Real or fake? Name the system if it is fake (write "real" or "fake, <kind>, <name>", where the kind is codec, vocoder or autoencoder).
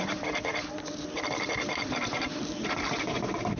fake, vocoder, BigVGAN v2